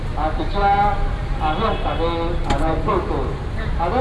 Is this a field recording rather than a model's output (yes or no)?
yes